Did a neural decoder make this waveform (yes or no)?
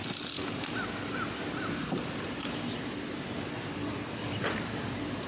no